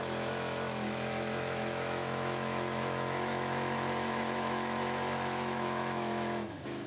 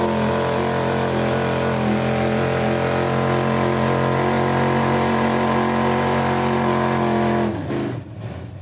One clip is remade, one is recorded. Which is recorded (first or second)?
second